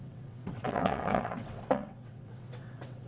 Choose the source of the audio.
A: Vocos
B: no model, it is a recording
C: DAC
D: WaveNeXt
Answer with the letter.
D